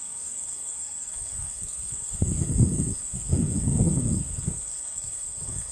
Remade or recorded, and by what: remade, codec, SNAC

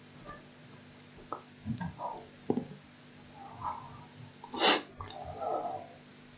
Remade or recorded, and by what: recorded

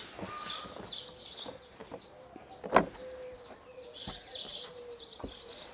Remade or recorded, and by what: recorded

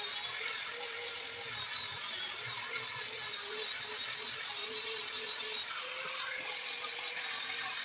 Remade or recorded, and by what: recorded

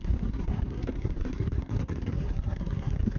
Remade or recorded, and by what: remade, codec, SNAC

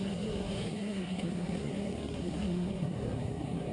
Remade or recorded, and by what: remade, codec, SNAC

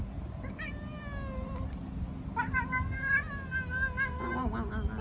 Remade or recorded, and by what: recorded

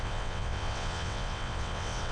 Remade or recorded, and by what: remade, vocoder, WaveNeXt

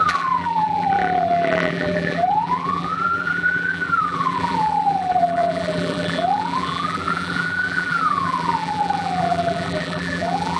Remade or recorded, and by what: remade, vocoder, BigVGAN v2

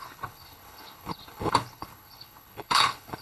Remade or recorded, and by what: remade, codec, HILCodec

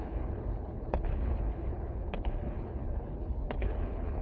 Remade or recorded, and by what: remade, codec, HILCodec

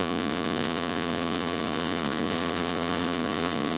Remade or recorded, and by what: remade, vocoder, Vocos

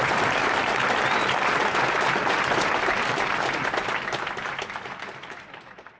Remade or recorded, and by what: remade, vocoder, BigVGAN v2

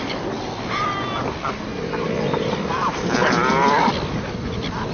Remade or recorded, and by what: remade, vocoder, BigVGAN v2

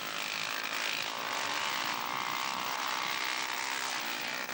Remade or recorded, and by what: remade, vocoder, BigVGAN v2